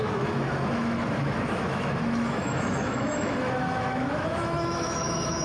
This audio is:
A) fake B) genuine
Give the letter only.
A